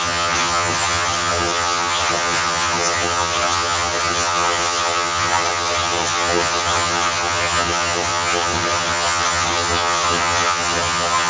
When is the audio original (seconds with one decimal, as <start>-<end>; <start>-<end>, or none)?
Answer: none